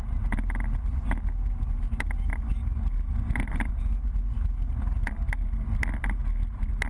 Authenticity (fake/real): real